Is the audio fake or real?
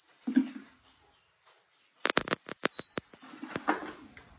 real